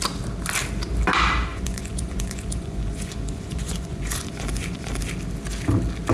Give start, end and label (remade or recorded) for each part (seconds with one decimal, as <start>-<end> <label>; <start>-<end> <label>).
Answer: 0.0-1.5 recorded; 1.5-5.0 remade; 5.0-6.1 recorded